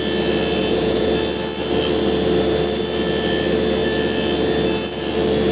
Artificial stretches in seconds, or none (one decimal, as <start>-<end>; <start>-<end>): 0.6-1.1

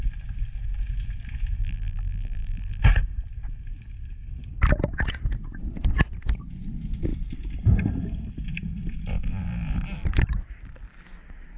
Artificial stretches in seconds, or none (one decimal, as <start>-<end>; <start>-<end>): 1.6-2.8

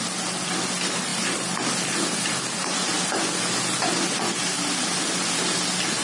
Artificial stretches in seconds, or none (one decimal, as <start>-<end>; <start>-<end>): none

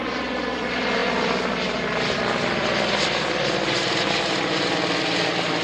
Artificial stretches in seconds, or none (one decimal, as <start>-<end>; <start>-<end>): none

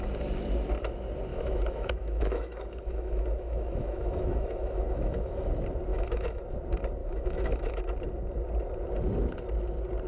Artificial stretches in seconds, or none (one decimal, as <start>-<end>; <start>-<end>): 1.3-5.5; 5.9-6.4; 7.0-7.8

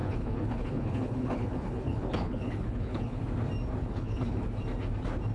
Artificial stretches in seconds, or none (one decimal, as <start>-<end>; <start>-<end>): 0.0-3.2; 3.8-4.4

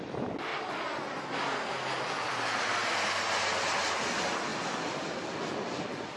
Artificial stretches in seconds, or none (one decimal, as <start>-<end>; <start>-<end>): 4.5-6.2

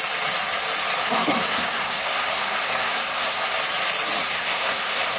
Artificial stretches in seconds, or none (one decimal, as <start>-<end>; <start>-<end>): 1.0-3.6; 4.2-5.2